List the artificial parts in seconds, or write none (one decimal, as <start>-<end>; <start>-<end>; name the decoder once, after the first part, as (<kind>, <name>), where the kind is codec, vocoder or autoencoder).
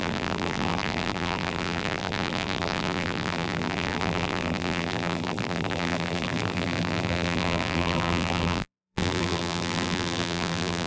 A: 0.0-10.9 (vocoder, BigVGAN v2)